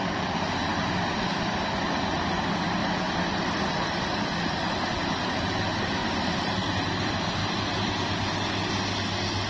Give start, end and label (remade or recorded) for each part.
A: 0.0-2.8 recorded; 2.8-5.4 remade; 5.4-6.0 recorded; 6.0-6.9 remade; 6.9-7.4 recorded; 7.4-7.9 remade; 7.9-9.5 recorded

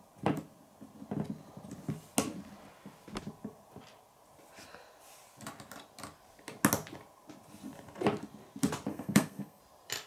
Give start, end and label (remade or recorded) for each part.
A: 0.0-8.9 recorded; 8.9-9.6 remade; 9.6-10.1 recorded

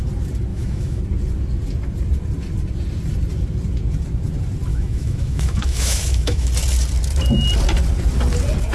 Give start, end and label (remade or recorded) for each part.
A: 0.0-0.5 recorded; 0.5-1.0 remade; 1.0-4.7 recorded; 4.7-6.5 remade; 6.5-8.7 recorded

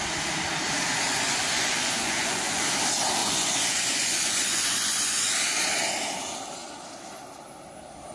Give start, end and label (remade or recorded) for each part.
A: 0.0-1.1 recorded; 1.1-2.6 remade; 2.6-3.2 recorded; 3.2-5.3 remade; 5.3-8.1 recorded

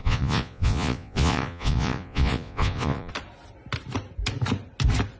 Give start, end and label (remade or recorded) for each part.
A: 0.0-3.1 remade; 3.1-5.2 recorded

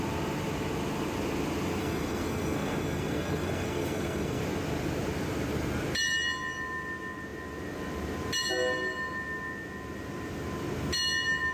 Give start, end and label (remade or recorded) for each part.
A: 0.0-1.8 recorded; 1.8-4.4 remade; 4.4-11.5 recorded

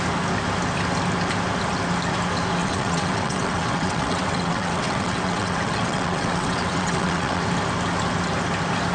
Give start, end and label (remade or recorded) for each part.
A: 0.0-2.6 recorded; 2.6-7.4 remade; 7.4-8.9 recorded